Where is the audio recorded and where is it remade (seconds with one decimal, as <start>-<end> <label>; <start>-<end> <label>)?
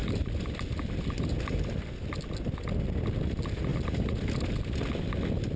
0.0-5.6 recorded